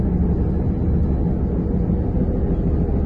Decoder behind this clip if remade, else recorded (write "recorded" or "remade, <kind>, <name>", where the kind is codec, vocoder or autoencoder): recorded